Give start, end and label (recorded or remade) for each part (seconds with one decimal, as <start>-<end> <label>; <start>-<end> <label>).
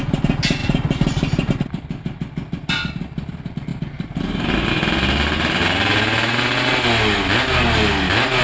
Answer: 0.0-0.6 recorded; 0.6-1.5 remade; 1.5-3.7 recorded; 3.7-4.5 remade; 4.5-8.4 recorded